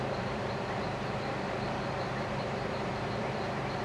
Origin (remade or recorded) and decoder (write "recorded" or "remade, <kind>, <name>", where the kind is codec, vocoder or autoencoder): remade, vocoder, BigVGAN v2